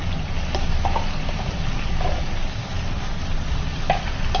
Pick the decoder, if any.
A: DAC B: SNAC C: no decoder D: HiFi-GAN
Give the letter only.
C